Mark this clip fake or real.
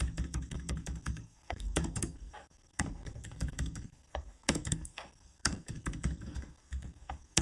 fake